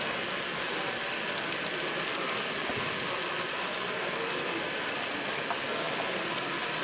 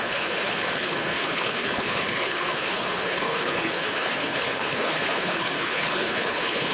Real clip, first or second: first